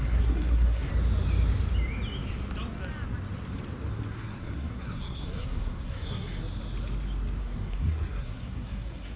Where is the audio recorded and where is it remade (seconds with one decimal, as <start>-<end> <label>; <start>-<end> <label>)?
0.0-0.9 remade; 0.9-4.1 recorded; 4.1-6.4 remade; 6.4-7.4 recorded; 7.4-9.2 remade